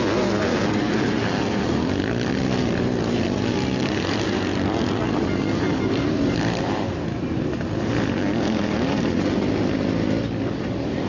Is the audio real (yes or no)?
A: yes